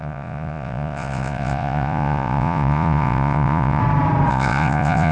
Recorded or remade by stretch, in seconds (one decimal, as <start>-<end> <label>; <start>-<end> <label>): 0.0-3.8 remade; 3.8-4.3 recorded; 4.3-5.1 remade